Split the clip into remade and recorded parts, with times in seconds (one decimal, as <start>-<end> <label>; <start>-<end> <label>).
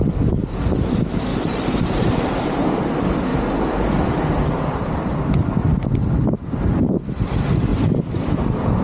0.0-1.3 recorded; 1.3-2.6 remade; 2.6-3.3 recorded; 3.3-5.3 remade; 5.3-7.7 recorded; 7.7-8.2 remade; 8.2-8.8 recorded